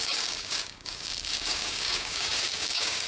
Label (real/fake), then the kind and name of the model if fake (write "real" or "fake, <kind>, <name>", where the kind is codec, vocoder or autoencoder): fake, codec, DAC